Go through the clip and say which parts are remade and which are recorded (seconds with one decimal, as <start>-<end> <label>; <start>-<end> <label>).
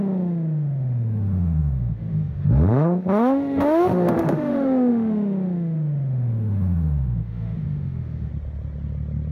0.0-8.3 remade; 8.3-9.3 recorded